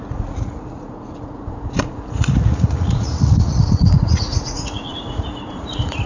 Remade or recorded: remade